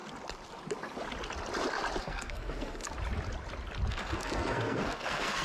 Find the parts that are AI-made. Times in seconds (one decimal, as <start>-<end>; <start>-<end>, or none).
2.0-2.8; 3.9-5.4